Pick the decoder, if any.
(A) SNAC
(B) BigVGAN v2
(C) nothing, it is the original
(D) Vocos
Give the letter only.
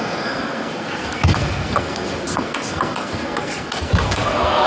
A